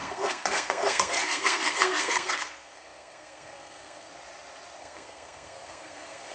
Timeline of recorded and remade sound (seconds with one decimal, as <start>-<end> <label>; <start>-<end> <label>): 0.0-4.1 remade; 4.1-4.8 recorded; 4.8-6.3 remade